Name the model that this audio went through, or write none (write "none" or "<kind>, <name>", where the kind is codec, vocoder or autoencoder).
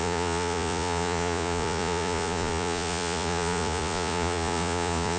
vocoder, Vocos